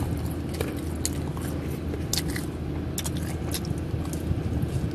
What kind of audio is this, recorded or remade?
recorded